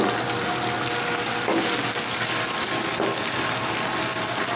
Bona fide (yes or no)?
yes